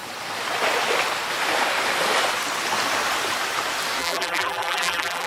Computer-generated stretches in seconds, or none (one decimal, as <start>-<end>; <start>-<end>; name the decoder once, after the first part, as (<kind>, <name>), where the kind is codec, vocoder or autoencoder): 4.0-5.3 (vocoder, BigVGAN v2)